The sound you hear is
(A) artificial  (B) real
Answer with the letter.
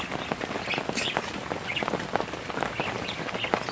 B